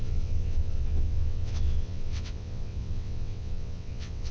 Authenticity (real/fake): fake